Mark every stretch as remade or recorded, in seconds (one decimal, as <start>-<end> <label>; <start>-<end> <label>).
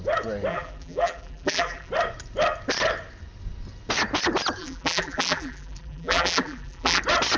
0.0-0.5 recorded; 0.5-1.9 remade; 1.9-4.6 recorded; 4.6-7.0 remade; 7.0-7.4 recorded